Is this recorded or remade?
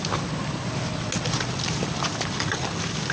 recorded